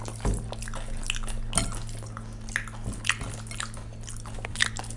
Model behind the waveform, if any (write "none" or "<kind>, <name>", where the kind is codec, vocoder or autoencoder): none